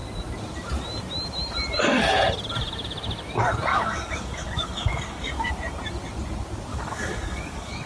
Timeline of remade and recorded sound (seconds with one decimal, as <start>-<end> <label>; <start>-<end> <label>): 0.0-3.7 recorded; 3.7-5.5 remade; 5.5-6.7 recorded; 6.7-7.9 remade